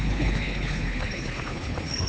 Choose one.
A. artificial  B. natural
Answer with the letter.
A